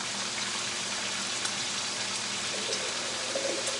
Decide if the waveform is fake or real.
real